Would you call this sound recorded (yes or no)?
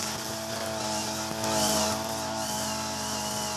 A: yes